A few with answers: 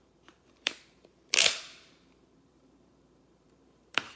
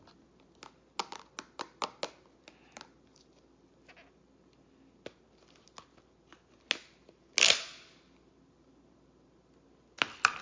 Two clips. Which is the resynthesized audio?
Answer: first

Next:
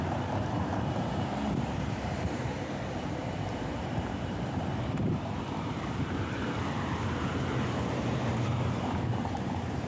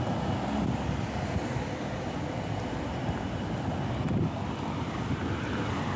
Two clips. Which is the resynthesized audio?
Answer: first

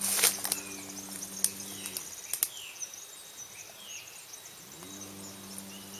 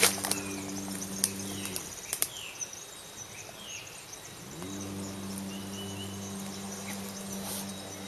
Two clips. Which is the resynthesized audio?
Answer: second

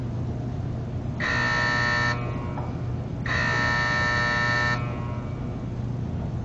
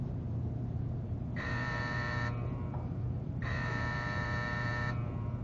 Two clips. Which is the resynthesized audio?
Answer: second